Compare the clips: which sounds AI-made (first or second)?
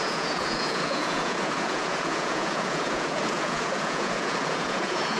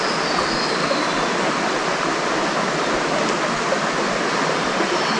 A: first